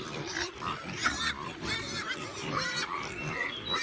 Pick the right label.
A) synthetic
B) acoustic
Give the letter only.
B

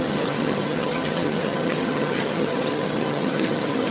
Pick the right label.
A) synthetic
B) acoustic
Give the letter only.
A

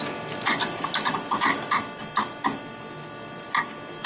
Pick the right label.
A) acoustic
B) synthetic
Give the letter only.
A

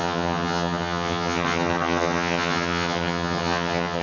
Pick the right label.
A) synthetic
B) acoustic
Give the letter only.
A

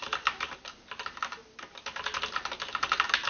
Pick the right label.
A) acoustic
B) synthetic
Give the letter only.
A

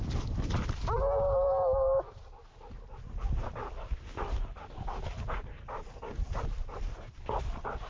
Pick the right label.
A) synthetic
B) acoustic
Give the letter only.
B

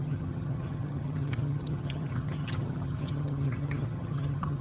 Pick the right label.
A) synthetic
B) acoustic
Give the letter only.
A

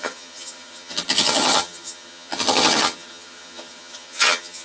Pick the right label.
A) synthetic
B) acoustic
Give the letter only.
A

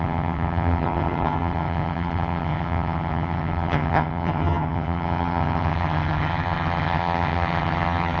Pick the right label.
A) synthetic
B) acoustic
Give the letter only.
A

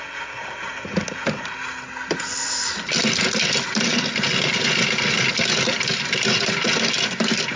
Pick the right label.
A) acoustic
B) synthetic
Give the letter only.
A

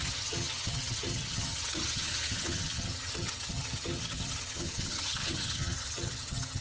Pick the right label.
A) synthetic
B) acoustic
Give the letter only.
A